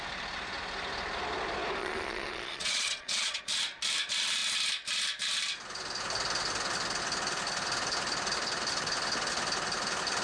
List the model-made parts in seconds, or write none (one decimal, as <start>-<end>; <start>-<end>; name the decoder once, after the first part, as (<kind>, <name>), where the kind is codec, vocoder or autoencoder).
1.8-3.4 (vocoder, Vocos)